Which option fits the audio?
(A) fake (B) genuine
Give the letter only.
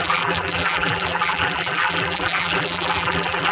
A